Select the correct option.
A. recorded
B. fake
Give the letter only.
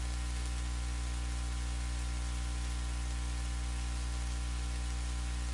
A